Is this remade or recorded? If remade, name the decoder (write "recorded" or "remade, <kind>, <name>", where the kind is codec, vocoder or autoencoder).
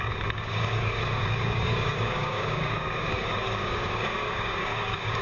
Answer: remade, codec, DAC